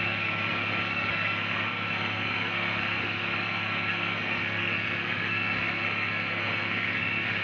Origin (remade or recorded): remade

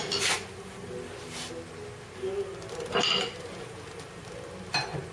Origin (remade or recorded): recorded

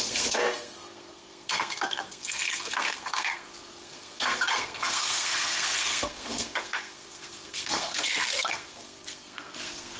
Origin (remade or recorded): remade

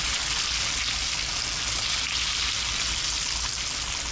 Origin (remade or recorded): recorded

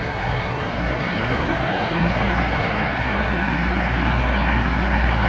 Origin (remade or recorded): remade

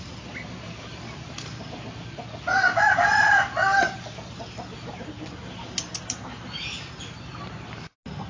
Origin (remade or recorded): recorded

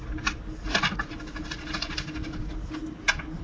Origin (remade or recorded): recorded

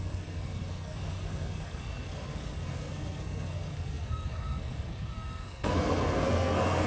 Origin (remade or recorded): remade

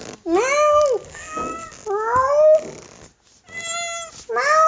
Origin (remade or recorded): recorded